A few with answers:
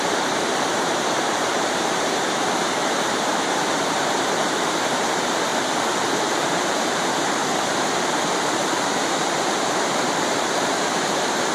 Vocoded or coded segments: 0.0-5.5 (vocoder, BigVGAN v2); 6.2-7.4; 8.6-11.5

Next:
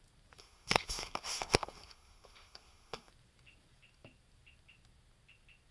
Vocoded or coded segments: 0.4-3.1 (codec, SNAC)

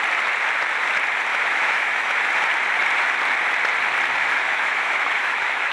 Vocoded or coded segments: 1.3-2.2 (autoencoder, DAC-VAE); 4.2-5.7